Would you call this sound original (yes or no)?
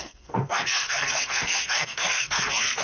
no